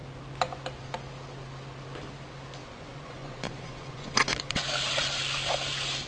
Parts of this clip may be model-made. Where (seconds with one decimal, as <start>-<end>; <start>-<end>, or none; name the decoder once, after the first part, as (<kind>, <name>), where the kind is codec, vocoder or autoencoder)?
2.6-4.6 (vocoder, Vocos)